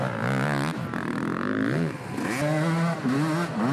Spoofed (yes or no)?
no